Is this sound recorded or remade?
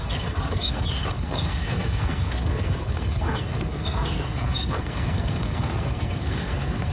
remade